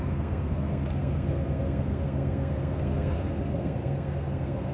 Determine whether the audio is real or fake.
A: fake